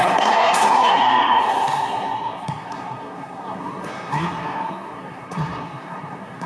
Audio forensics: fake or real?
fake